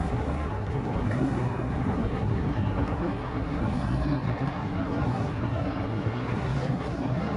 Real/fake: fake